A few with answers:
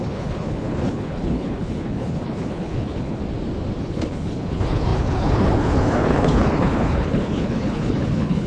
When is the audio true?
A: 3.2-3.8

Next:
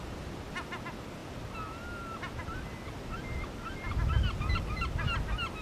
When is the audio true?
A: 0.0-5.6

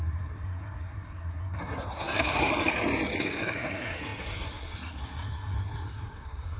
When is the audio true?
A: 2.5-3.2

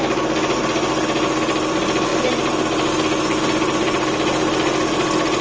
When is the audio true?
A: 0.0-5.4

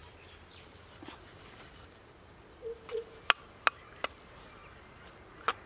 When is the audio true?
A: 0.0-5.7

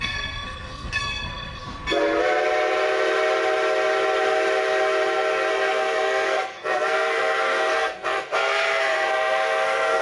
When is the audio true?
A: 1.6-5.5

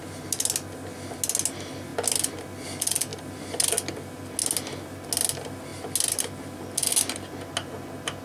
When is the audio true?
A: 0.0-8.2